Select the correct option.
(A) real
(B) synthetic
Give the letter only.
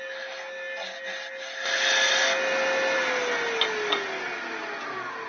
A